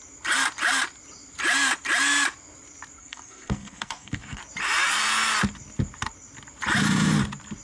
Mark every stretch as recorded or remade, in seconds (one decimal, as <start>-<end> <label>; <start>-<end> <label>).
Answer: 0.0-3.0 recorded; 3.0-4.4 remade; 4.4-7.6 recorded